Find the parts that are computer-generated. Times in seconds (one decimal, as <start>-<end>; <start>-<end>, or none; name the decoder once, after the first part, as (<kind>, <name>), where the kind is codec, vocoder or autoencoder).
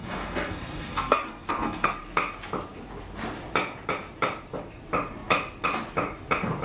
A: 0.0-2.0 (codec, SNAC)